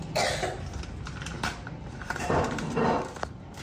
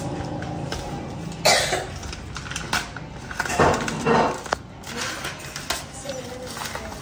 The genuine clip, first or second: second